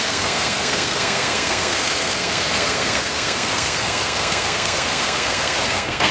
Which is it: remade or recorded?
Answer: remade